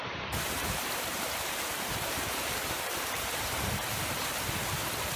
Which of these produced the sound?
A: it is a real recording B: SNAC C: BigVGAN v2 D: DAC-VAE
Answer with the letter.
C